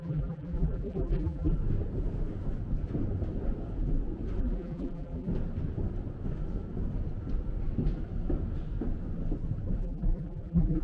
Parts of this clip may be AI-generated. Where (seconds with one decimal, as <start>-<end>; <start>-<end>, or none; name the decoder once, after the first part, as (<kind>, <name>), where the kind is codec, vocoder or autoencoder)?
0.0-1.6 (vocoder, BigVGAN v2); 4.4-5.3; 9.8-10.8